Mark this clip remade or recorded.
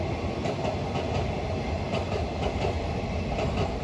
recorded